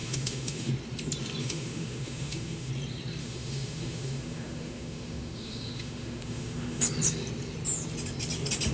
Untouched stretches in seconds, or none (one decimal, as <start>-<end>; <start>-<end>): 0.7-1.4; 2.7-3.2; 6.8-8.7